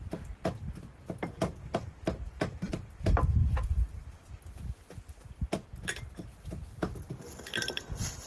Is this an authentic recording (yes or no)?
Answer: no